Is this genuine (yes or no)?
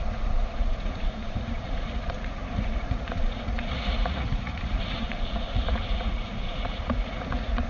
no